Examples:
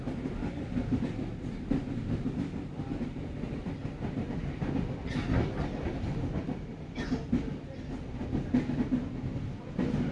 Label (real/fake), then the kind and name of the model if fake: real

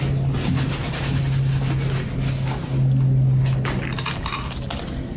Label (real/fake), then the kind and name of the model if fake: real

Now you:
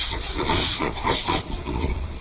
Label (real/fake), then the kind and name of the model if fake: fake, vocoder, Vocos